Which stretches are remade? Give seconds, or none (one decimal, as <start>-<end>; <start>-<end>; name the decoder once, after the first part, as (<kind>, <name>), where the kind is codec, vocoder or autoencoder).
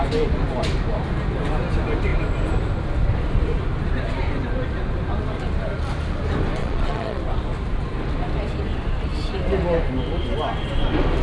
6.6-7.2 (vocoder, Vocos)